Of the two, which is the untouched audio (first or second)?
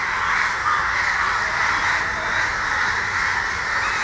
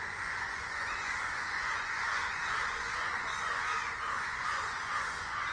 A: first